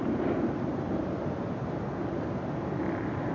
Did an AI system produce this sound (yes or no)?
no